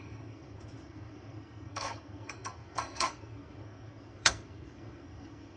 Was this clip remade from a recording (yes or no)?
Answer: yes